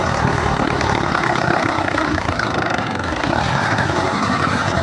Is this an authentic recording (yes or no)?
no